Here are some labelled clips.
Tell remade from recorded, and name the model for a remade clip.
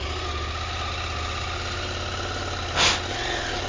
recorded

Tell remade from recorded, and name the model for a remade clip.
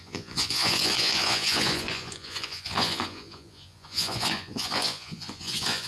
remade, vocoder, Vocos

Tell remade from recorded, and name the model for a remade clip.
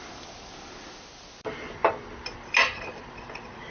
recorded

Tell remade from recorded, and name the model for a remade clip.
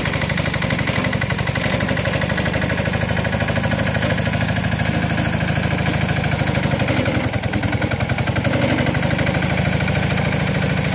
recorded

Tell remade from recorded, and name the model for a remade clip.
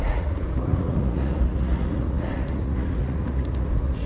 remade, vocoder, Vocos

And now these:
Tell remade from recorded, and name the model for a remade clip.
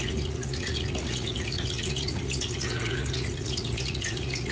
remade, vocoder, Vocos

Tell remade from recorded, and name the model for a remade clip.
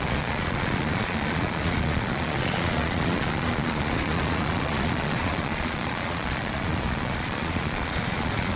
remade, vocoder, Vocos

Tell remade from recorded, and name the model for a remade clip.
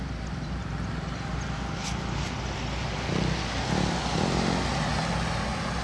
recorded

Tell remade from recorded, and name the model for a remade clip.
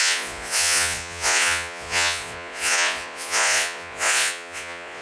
remade, vocoder, Vocos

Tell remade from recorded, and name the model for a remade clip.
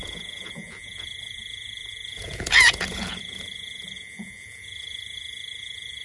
remade, vocoder, Vocos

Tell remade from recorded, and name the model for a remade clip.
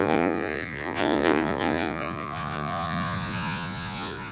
remade, vocoder, Vocos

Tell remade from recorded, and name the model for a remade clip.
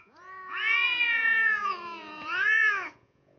remade, vocoder, Vocos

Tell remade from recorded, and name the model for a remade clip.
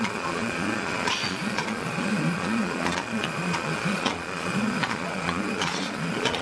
remade, vocoder, Vocos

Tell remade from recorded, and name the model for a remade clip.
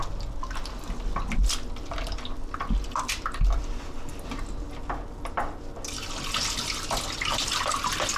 recorded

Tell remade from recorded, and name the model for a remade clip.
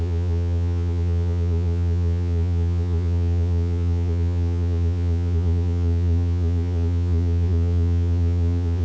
remade, vocoder, Vocos